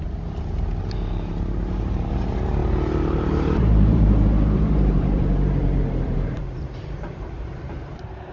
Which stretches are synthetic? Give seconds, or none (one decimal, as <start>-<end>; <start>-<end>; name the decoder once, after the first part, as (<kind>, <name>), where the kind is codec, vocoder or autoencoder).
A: 0.0-8.3 (vocoder, BigVGAN v2)